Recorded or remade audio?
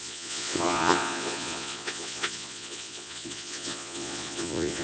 remade